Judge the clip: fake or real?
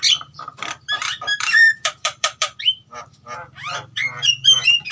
fake